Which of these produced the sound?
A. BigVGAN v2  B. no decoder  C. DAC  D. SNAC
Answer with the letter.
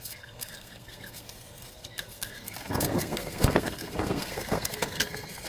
D